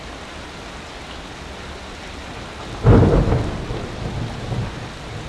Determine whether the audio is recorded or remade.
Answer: recorded